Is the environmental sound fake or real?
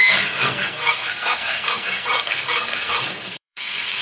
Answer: fake